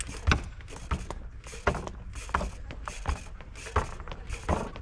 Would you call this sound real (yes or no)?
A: yes